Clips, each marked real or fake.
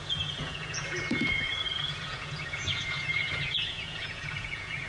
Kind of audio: fake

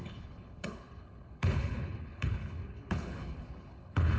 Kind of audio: fake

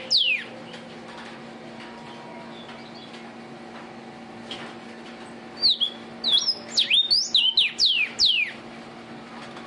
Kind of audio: real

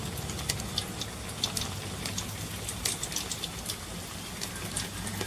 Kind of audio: real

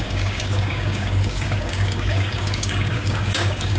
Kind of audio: fake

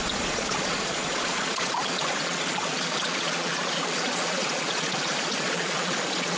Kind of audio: fake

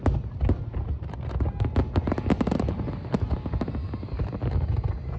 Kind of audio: real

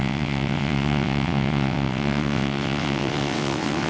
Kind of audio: fake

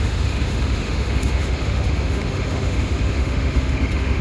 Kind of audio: fake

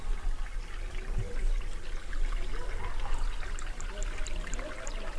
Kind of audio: real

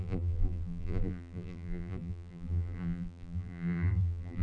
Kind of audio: fake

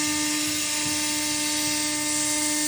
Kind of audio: real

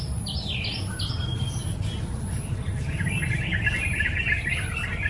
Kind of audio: real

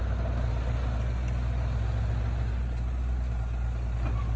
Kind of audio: real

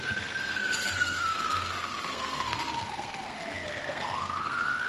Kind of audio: fake